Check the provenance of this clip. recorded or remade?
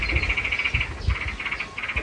recorded